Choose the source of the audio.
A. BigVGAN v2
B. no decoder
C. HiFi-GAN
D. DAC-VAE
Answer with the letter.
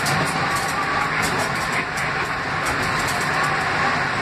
B